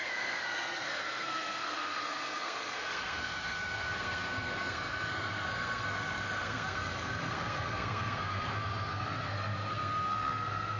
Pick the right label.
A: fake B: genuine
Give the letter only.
A